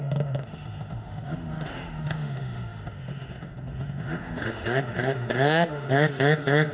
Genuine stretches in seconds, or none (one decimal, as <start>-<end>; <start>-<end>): none